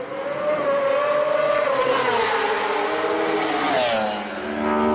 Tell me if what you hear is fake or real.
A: real